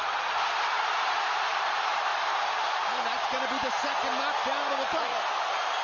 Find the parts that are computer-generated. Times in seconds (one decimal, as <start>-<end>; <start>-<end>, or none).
0.0-2.1; 4.9-5.8